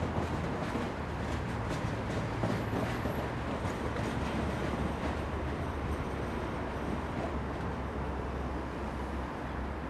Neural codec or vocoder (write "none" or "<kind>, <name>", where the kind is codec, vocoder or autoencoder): vocoder, BigVGAN v2